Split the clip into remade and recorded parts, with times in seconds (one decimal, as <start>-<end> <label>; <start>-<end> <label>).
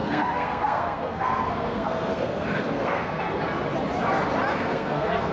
0.0-3.2 remade; 3.2-4.5 recorded; 4.5-5.3 remade